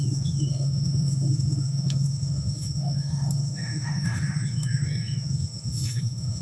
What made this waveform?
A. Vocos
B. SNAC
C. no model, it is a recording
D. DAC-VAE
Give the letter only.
D